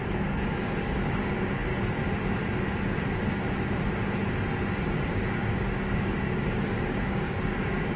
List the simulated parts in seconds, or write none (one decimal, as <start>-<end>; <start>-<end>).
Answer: 0.0-1.7; 5.1-8.0